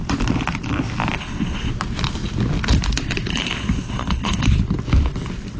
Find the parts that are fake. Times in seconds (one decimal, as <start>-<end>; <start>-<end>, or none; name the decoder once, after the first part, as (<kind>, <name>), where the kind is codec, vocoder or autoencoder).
1.2-1.7 (codec, HILCodec); 3.3-4.5